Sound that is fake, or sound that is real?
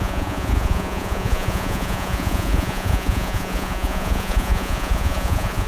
fake